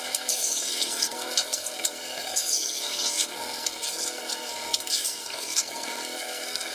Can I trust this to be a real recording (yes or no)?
no